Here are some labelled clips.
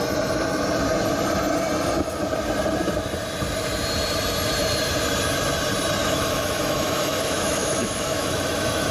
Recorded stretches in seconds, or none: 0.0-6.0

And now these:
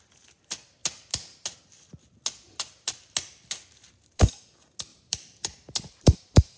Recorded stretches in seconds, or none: 0.0-4.9

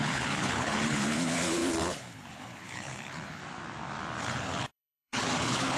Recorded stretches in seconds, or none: 3.4-4.2

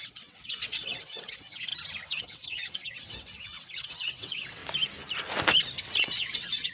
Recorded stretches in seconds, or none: 1.7-2.2; 4.6-6.0

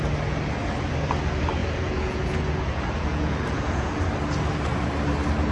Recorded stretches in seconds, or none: 0.0-1.6; 4.0-5.5

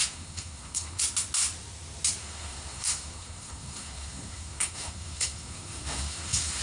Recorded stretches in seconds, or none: 1.0-2.2

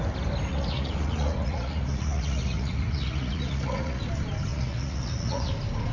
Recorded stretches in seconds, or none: 0.0-0.5; 4.0-4.5; 5.5-5.9

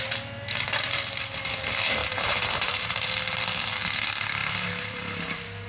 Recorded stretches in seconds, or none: 0.0-2.0; 3.1-4.4; 5.2-5.7